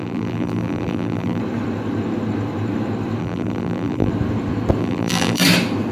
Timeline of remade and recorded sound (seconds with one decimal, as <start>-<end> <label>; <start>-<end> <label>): 0.0-1.4 remade; 1.4-3.2 recorded; 3.2-4.1 remade; 4.1-4.8 recorded; 4.8-5.4 remade; 5.4-5.9 recorded